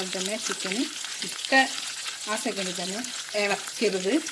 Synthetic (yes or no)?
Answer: yes